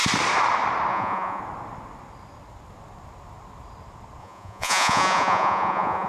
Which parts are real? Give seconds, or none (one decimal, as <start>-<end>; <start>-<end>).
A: 0.0-0.9; 1.4-4.2